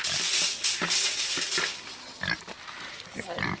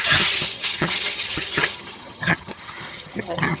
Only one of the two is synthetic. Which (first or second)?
second